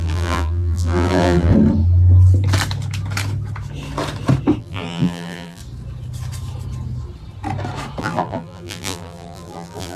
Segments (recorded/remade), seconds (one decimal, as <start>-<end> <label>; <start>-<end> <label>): 0.0-1.5 remade; 1.5-4.6 recorded; 4.6-5.6 remade; 5.6-8.0 recorded; 8.0-10.0 remade